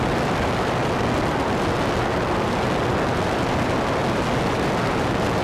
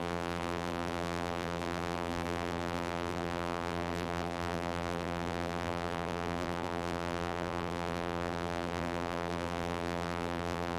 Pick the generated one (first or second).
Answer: second